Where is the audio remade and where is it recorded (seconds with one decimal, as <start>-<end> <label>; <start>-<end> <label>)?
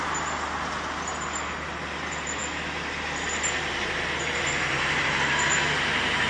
0.0-6.3 recorded